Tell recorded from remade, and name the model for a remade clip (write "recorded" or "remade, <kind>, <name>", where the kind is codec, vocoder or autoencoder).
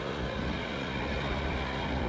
remade, vocoder, Vocos